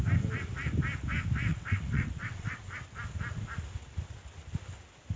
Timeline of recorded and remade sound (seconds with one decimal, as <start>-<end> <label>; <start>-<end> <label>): 0.0-1.5 recorded; 1.5-2.6 remade; 2.6-5.2 recorded